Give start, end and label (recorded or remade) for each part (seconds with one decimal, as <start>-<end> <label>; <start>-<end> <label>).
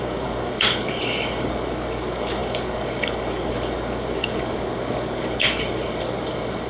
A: 0.0-6.7 remade